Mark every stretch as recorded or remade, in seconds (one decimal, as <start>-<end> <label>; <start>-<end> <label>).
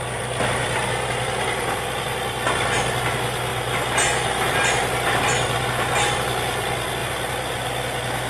0.0-8.3 recorded